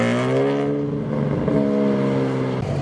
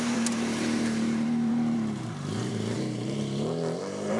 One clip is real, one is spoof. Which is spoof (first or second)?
second